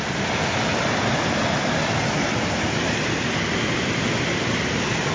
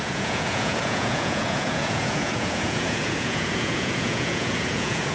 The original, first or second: first